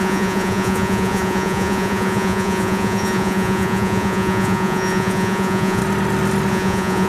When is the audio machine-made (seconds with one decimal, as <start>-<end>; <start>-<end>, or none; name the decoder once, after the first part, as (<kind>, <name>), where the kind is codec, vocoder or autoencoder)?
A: 0.0-5.8 (vocoder, Vocos); 6.5-7.1